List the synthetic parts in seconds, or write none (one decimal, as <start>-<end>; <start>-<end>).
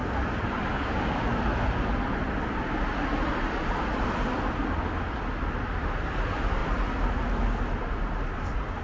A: 0.7-1.3